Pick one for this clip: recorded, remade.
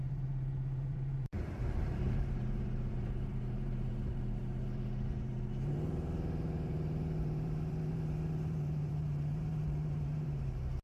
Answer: remade